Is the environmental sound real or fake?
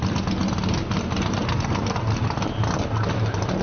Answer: real